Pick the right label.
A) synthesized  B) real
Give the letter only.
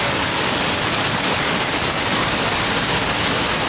A